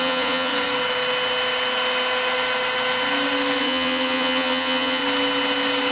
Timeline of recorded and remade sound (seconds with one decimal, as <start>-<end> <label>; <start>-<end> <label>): 0.0-0.5 remade; 0.5-3.6 recorded; 3.6-5.0 remade; 5.0-5.9 recorded